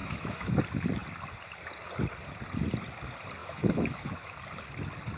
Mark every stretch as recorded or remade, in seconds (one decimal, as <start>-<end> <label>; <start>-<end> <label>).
0.0-0.6 remade; 0.6-3.4 recorded; 3.4-4.4 remade; 4.4-5.2 recorded